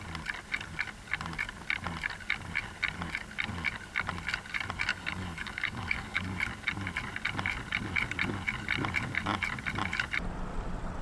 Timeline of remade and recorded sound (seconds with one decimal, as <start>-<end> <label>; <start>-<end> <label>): 0.0-4.9 recorded; 4.9-6.4 remade; 6.4-11.0 recorded